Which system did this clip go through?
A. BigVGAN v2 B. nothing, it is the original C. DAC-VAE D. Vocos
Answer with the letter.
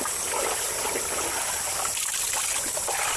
B